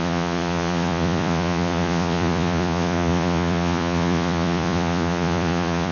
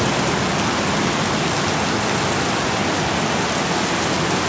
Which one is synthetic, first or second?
first